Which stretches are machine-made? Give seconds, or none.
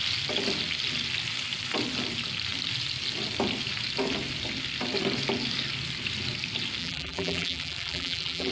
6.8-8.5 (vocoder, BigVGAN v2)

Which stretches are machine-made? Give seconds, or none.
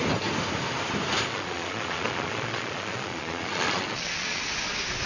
1.3-4.4 (vocoder, Vocos)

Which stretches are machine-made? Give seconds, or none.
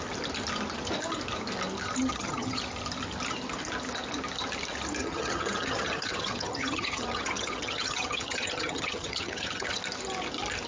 2.0-2.6 (vocoder, HiFi-GAN); 5.0-9.8